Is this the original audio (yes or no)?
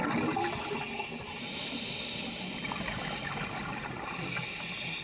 yes